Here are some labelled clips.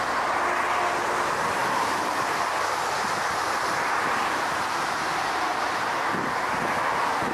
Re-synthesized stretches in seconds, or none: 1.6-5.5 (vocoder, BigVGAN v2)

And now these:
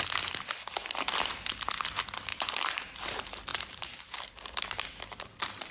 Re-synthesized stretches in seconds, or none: 2.3-3.1 (vocoder, BigVGAN v2); 3.5-5.7

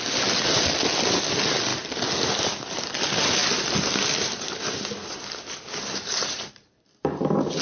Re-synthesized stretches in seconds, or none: none